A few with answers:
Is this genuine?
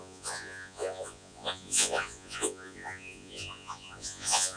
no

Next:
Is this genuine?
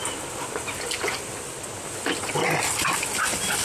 yes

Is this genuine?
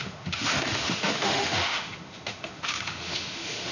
no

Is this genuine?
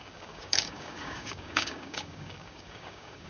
no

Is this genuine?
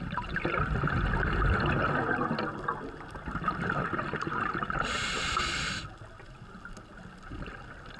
yes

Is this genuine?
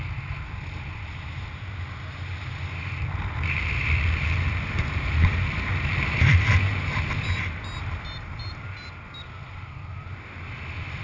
yes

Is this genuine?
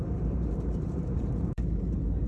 no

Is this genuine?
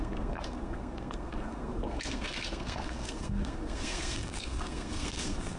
no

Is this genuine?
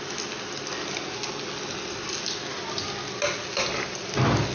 yes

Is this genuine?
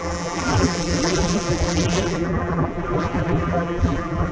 no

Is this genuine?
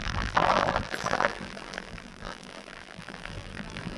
no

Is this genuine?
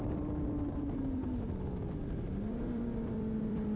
no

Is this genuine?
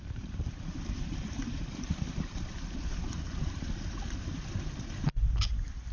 no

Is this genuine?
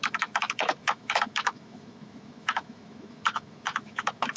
no